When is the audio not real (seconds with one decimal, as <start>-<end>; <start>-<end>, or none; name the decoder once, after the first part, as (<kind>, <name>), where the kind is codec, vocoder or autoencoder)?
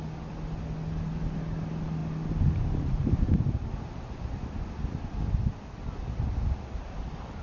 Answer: none